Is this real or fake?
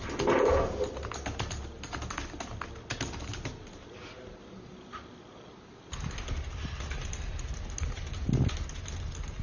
real